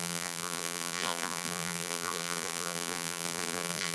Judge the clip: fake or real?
fake